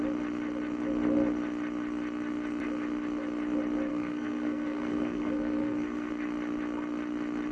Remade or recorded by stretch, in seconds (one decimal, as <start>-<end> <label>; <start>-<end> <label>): 0.0-3.9 recorded; 3.9-6.1 remade; 6.1-7.5 recorded